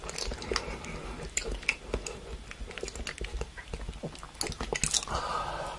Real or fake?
real